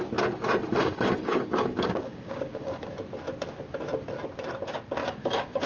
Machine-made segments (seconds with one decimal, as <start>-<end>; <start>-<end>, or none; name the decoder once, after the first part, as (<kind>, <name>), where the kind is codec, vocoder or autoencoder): 0.8-2.9 (codec, DAC); 5.0-5.7